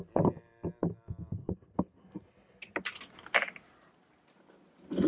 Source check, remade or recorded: recorded